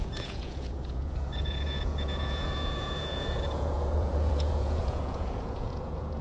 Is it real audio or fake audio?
fake